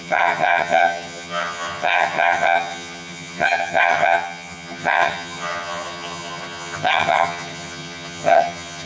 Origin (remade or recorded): remade